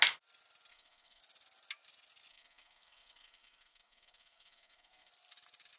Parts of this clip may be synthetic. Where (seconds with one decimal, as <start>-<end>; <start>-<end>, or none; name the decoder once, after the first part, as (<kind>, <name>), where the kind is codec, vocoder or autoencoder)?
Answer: 0.7-1.2 (codec, SNAC); 2.3-5.1